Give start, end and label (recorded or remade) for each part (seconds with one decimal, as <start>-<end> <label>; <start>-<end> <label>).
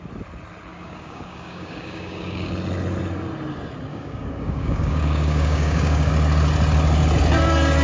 0.0-0.7 recorded; 0.7-2.5 remade; 2.5-3.9 recorded; 3.9-6.1 remade; 6.1-7.8 recorded